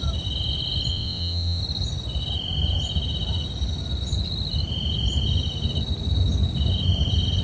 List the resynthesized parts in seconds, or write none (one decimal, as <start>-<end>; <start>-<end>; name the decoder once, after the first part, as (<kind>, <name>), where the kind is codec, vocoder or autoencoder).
0.9-1.6 (vocoder, WaveNeXt)

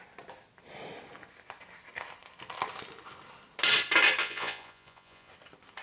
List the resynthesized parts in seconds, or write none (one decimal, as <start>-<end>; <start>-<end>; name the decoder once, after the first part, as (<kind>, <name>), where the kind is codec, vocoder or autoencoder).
4.2-5.3 (vocoder, Vocos)